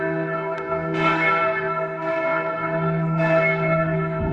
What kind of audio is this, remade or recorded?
remade